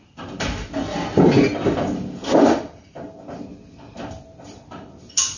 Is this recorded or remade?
recorded